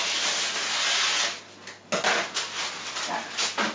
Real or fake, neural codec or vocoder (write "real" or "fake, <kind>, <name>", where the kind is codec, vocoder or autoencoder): real